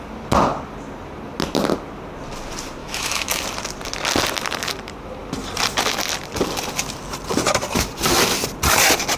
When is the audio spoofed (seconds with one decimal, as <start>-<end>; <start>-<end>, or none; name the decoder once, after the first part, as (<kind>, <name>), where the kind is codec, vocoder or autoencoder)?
2.8-3.4 (autoencoder, DAC-VAE)